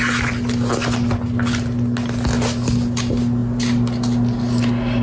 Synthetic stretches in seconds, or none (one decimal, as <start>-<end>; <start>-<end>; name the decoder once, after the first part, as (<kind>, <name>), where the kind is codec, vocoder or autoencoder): none